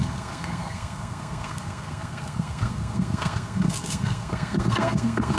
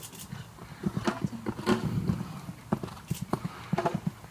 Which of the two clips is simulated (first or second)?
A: first